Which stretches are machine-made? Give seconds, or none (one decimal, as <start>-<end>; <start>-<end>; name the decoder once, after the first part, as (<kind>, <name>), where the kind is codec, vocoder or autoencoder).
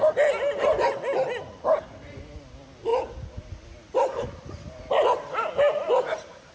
none